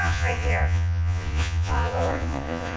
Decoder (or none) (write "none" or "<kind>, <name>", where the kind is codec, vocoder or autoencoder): vocoder, Vocos